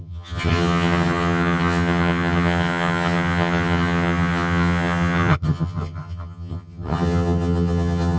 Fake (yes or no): yes